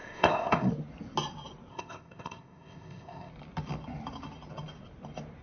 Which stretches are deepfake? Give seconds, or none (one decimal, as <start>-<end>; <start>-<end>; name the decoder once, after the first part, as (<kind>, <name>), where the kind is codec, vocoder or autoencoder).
0.0-0.7 (codec, ZipCodec); 1.7-3.3